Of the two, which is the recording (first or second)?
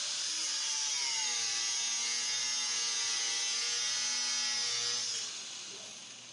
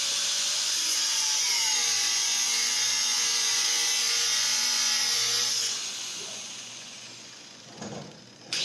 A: first